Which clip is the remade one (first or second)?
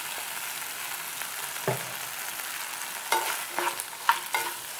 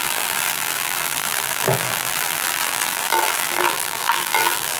second